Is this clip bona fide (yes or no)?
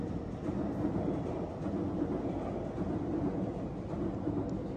yes